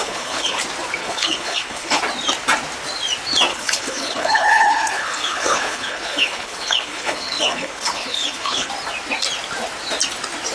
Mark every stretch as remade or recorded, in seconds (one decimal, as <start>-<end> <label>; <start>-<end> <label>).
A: 0.0-0.6 remade; 0.6-1.0 recorded; 1.0-2.0 remade; 2.0-3.5 recorded; 3.5-8.7 remade; 8.7-10.5 recorded